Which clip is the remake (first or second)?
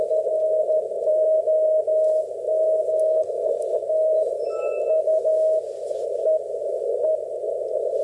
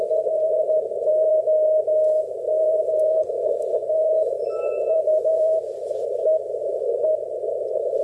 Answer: second